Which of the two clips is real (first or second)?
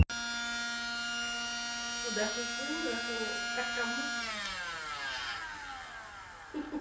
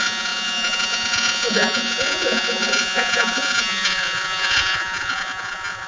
first